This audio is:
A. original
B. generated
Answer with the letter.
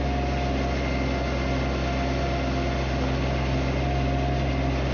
A